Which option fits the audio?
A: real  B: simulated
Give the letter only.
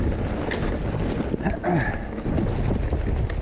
A